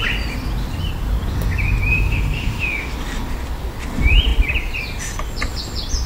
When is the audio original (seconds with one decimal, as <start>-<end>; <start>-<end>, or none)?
0.0-1.9; 2.9-6.1